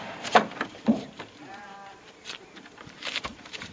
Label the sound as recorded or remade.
remade